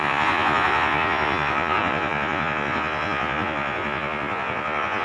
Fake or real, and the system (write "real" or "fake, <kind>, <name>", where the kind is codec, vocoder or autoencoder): fake, vocoder, Vocos